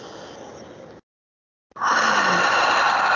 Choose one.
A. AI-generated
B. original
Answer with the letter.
B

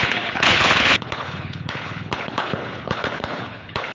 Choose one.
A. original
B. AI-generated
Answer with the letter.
B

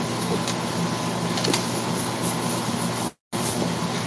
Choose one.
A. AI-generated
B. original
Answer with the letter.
B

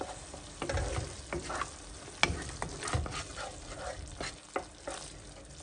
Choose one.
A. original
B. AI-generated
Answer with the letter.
A